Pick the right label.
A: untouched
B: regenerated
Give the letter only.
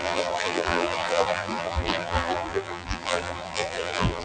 B